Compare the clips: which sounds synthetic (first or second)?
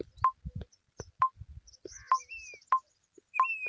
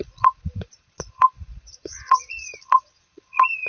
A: second